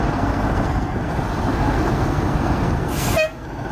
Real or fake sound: fake